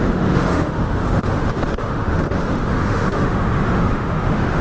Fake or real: fake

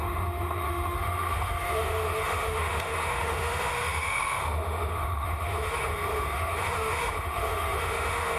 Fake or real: fake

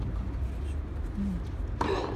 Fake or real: real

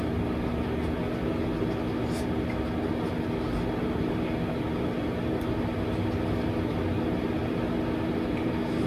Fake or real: real